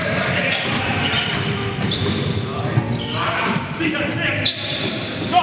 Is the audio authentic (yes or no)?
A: no